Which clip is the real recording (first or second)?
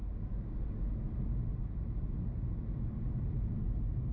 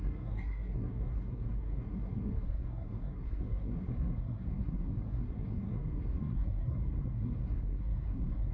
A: first